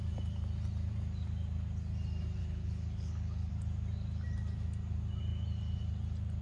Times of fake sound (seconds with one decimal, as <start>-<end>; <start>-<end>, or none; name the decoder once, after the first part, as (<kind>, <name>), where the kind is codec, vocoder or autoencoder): 2.4-3.5 (codec, HILCodec)